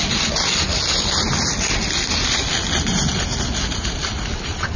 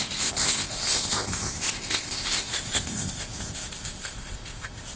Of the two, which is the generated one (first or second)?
second